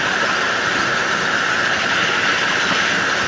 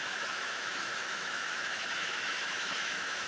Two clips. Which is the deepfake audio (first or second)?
second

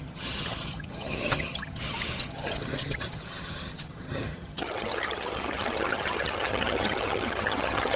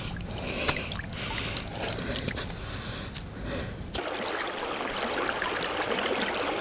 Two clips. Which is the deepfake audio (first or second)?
first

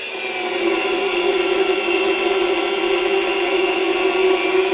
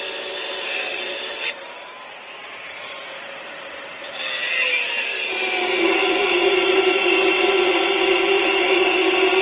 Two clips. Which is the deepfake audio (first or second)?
second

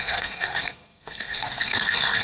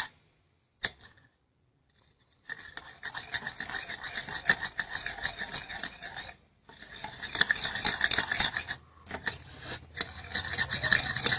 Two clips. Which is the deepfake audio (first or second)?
first